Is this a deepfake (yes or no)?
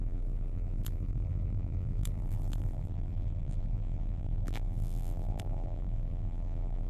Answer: yes